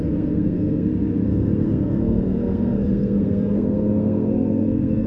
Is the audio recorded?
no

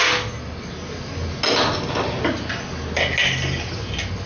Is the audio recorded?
yes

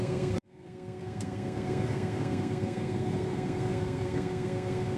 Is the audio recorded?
no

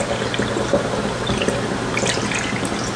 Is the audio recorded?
yes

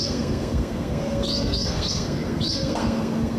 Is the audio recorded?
no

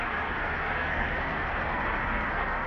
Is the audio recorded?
no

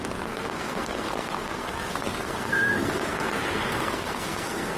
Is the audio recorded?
no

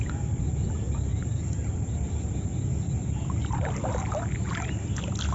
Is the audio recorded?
yes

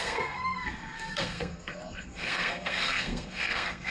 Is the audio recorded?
no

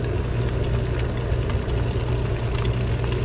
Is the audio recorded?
yes